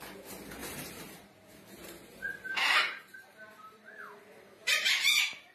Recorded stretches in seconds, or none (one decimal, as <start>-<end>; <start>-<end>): 0.0-0.6; 3.9-4.6